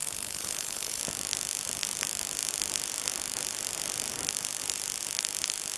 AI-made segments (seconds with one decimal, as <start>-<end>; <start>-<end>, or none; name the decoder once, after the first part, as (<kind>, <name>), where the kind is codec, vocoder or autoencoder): 0.0-1.0 (codec, HILCodec)